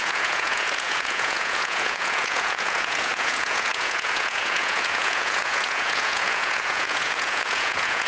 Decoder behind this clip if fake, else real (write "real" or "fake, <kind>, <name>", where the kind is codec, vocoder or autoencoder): fake, vocoder, Vocos